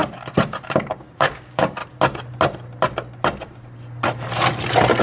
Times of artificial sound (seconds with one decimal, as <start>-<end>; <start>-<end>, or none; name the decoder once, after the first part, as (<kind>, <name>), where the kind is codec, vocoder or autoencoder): 1.1-1.8 (codec, DAC)